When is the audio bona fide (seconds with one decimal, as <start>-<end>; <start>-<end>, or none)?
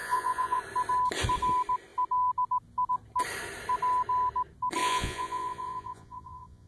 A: 0.6-4.8